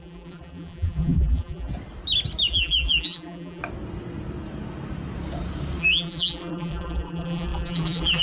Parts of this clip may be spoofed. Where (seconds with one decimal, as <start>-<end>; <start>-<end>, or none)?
0.0-1.7; 2.5-3.6; 5.8-8.2